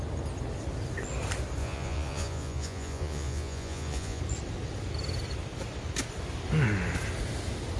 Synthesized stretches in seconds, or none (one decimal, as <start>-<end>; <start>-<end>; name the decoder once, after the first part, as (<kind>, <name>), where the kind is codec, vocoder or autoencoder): 1.6-4.2 (vocoder, Vocos)